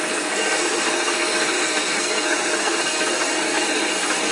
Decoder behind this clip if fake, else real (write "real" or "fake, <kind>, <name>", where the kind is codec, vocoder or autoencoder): fake, codec, SNAC